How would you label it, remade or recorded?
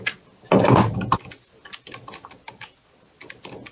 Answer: recorded